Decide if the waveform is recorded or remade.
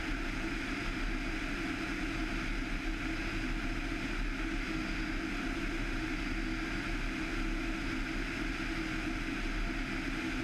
recorded